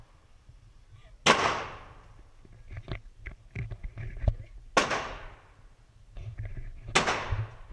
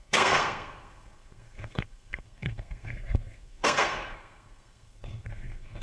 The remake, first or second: second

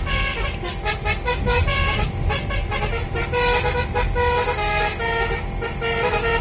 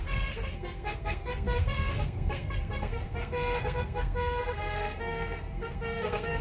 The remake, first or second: second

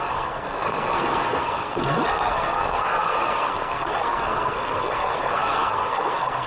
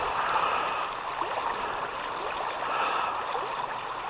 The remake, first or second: first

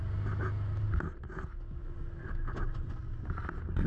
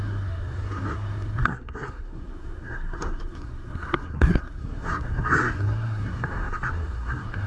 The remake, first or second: second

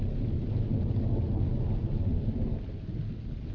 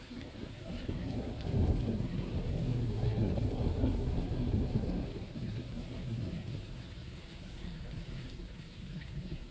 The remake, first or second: second